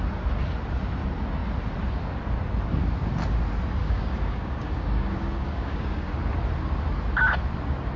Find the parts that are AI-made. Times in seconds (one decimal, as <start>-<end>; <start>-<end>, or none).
3.8-6.1